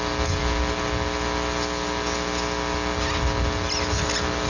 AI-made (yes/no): no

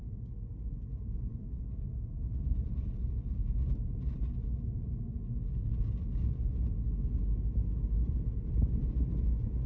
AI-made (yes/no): no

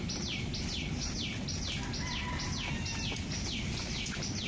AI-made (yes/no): no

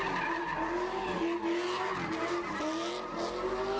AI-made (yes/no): no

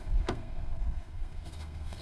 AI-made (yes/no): yes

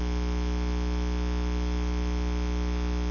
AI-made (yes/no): no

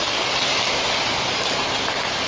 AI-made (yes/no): no